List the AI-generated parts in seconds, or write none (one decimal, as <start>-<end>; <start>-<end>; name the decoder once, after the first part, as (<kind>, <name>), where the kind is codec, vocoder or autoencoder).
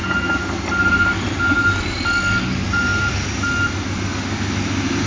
none